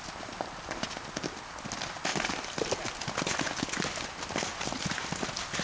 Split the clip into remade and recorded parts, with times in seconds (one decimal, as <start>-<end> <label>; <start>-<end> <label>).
0.0-5.6 recorded